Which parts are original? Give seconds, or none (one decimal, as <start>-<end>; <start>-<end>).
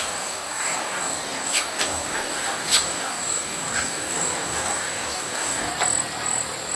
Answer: 5.7-6.8